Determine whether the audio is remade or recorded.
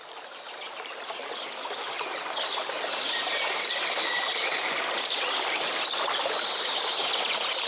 recorded